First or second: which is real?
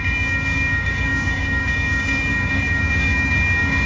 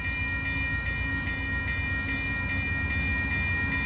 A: second